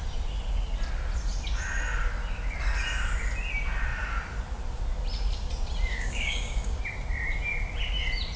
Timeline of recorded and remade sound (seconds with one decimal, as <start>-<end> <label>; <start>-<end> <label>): 0.0-5.9 recorded; 5.9-6.8 remade; 6.8-8.4 recorded